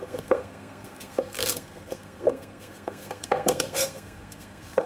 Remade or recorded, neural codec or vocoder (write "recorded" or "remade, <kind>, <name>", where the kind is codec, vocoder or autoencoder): remade, codec, SNAC